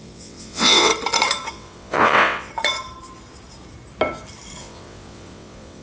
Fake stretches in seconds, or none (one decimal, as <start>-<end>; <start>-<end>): 0.0-0.9; 1.5-2.5; 4.6-5.8